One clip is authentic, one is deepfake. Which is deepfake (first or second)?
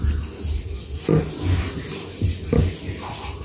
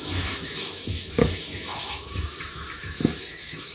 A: second